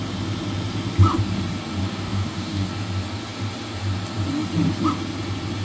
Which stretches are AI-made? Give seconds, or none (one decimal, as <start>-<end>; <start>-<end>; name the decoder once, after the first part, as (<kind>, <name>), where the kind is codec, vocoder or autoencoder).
1.8-2.7 (codec, DAC)